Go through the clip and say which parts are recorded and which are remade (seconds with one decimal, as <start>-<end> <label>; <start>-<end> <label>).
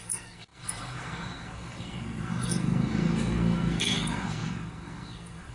0.0-5.5 remade